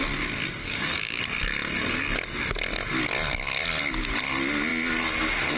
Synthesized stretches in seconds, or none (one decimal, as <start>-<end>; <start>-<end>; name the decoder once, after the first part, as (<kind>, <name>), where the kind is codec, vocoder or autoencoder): 0.6-1.2 (codec, DAC)